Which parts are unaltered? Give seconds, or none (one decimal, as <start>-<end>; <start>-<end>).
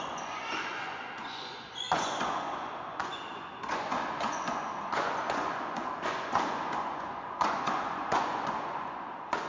none